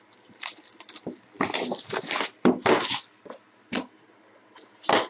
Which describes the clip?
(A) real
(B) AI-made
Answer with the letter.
A